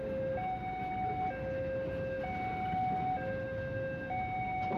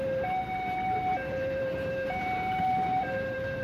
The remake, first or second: second